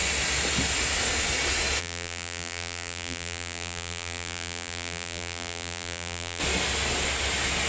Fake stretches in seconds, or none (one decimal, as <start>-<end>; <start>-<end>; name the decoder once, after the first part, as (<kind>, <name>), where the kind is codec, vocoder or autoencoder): 1.8-6.4 (vocoder, BigVGAN v2)